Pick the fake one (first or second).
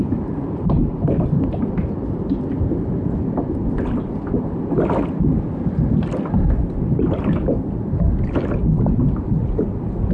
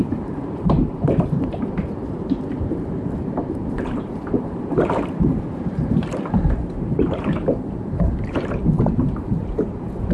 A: second